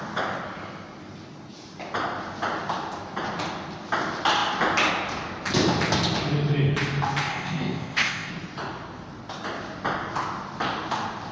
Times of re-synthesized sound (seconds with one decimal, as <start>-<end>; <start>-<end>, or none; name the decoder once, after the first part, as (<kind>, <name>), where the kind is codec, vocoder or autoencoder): 7.3-8.3 (codec, ZipCodec)